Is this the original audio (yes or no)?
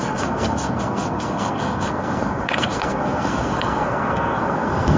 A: no